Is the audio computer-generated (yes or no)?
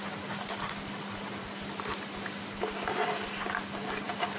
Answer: no